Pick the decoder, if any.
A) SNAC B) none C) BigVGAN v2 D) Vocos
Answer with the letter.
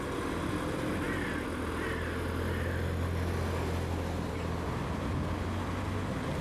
B